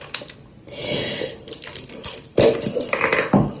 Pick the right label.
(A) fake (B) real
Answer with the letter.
B